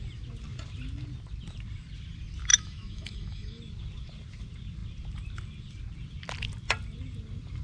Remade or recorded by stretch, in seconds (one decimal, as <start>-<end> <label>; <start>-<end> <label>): 0.0-2.5 recorded; 2.5-3.6 remade; 3.6-7.6 recorded

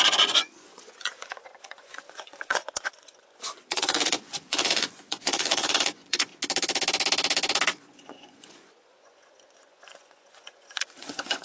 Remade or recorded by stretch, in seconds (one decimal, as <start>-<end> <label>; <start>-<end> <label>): 0.0-6.3 remade; 6.3-7.7 recorded; 7.7-11.4 remade